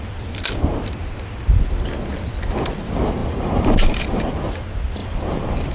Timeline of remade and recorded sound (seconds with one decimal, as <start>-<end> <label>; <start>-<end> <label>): 0.0-3.2 recorded; 3.2-4.3 remade; 4.3-5.0 recorded; 5.0-5.7 remade